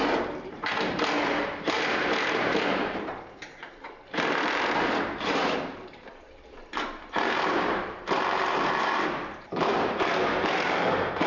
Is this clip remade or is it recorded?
remade